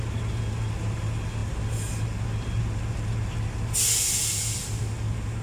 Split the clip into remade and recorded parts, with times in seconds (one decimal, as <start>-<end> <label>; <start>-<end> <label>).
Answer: 0.0-4.2 recorded; 4.2-4.8 remade; 4.8-5.4 recorded